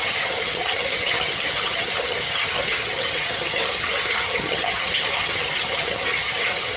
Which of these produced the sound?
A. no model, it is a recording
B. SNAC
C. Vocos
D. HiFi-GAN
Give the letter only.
D